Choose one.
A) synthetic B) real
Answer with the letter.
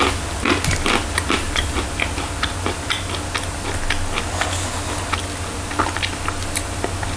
B